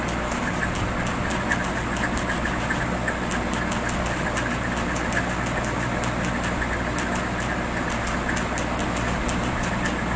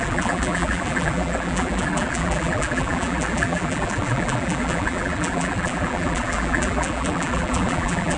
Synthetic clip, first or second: second